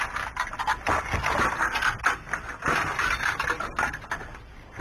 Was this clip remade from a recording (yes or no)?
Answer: no